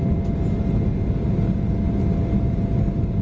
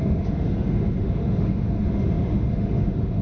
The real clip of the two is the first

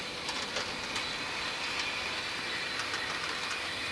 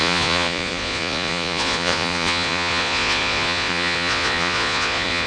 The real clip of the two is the first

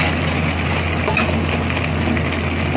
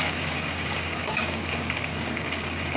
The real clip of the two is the first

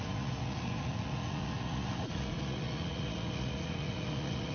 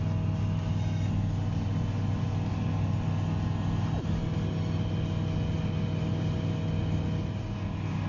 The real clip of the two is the second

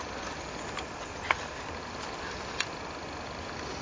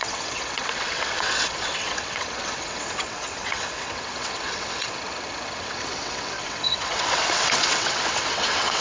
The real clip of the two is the first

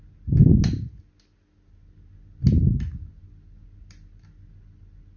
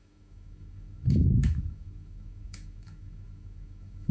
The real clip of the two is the first